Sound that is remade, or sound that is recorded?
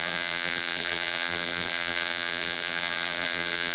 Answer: remade